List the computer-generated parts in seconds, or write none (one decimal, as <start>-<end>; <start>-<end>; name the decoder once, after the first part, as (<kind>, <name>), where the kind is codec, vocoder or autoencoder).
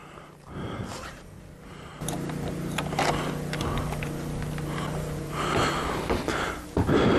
0.0-0.9 (vocoder, BigVGAN v2); 1.9-3.0